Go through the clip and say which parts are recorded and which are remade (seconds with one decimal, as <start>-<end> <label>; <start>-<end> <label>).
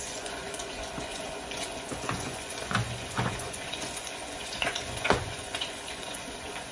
0.0-6.7 remade